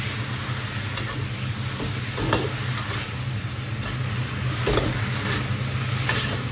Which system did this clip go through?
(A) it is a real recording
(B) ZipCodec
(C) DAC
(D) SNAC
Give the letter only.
A